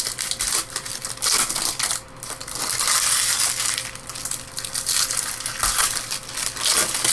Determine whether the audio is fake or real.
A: real